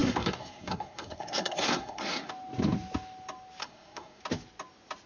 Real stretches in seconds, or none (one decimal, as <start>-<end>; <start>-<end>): 2.3-3.6; 4.2-5.1